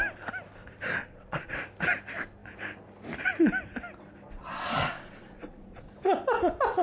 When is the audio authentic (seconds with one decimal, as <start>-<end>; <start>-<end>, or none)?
0.0-1.0; 1.6-4.4; 5.9-6.8